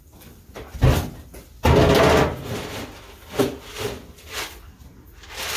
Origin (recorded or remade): recorded